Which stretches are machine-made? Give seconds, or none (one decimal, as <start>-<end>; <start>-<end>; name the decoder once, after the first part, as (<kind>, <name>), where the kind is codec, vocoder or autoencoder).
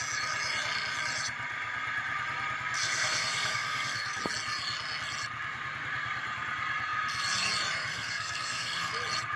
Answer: 2.8-4.2 (codec, SNAC); 7.9-8.9